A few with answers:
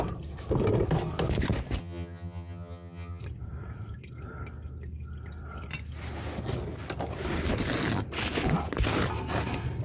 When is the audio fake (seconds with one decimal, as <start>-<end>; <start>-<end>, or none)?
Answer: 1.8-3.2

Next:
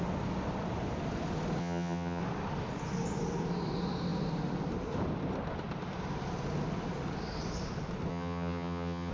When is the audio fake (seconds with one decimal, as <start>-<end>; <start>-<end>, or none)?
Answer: 1.6-2.2; 8.1-9.1

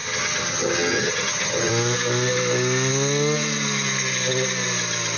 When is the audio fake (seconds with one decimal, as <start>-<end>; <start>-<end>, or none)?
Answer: 0.0-1.7

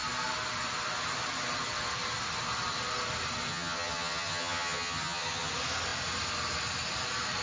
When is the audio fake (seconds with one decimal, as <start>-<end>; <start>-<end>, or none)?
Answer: 3.5-5.5

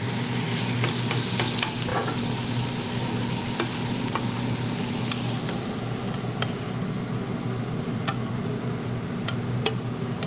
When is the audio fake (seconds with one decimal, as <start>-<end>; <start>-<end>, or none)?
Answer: none